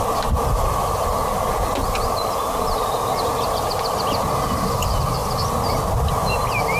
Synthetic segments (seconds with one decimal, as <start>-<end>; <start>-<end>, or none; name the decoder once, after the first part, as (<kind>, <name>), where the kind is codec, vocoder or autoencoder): none